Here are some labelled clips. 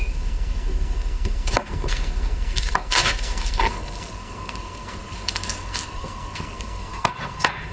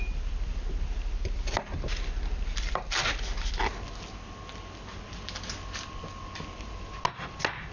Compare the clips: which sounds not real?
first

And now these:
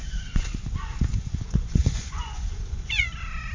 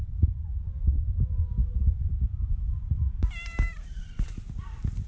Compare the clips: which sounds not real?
first